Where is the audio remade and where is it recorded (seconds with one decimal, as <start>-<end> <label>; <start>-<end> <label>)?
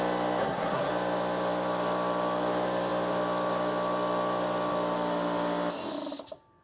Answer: 0.0-0.4 recorded; 0.4-0.9 remade; 0.9-6.6 recorded